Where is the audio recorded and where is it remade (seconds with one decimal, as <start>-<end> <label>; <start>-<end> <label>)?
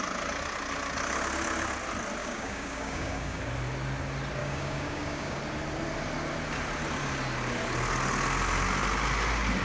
0.0-2.2 recorded; 2.2-3.4 remade; 3.4-4.4 recorded; 4.4-5.4 remade; 5.4-9.6 recorded